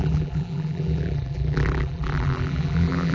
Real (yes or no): no